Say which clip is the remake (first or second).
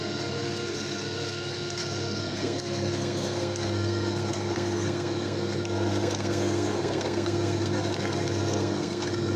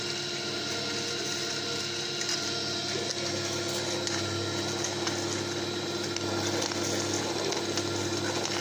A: first